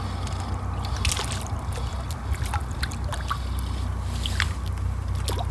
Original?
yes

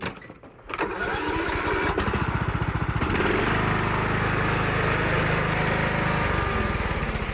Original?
yes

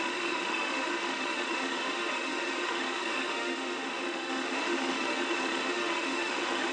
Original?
no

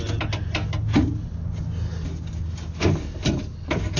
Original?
yes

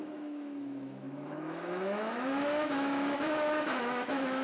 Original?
no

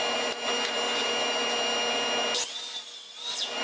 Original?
yes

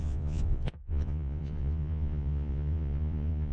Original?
no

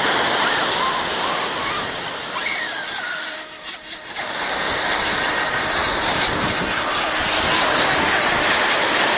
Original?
yes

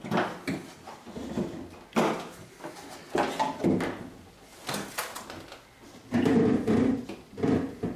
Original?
yes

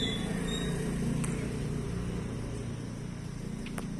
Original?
yes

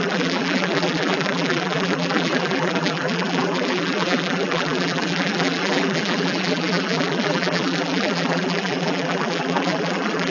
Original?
no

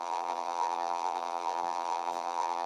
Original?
no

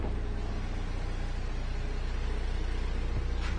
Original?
yes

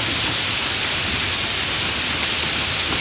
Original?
yes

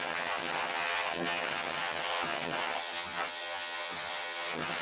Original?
no